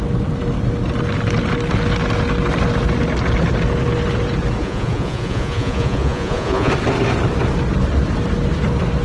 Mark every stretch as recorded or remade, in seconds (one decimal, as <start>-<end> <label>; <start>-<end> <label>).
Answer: 0.0-4.6 recorded; 4.6-6.7 remade; 6.7-9.0 recorded